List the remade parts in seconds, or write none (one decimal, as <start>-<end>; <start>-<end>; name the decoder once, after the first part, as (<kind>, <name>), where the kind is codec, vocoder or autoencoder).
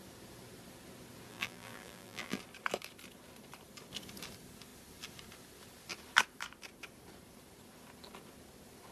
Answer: 1.3-2.4 (vocoder, BigVGAN v2)